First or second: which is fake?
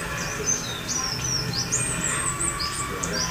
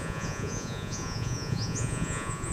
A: second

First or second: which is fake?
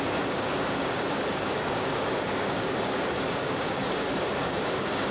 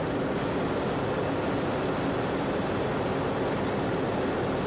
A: first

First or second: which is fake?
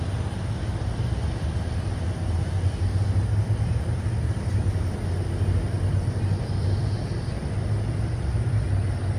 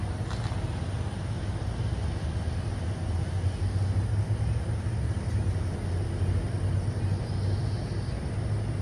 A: first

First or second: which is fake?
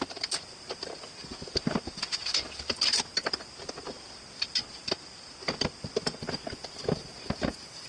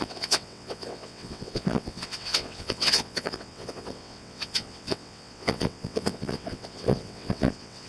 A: second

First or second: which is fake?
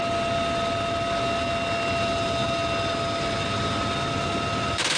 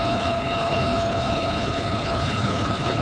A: second